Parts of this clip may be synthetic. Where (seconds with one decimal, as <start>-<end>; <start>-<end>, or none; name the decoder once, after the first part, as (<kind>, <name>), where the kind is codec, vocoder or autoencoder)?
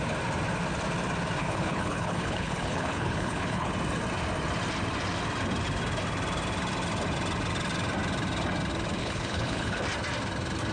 1.4-3.7 (codec, HILCodec); 9.0-9.8